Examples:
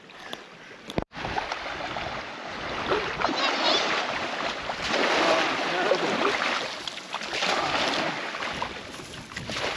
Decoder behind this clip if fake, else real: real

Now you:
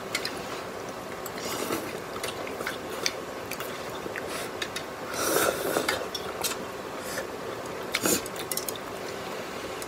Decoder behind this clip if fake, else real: fake, vocoder, BigVGAN v2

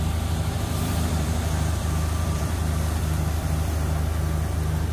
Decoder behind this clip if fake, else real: fake, vocoder, BigVGAN v2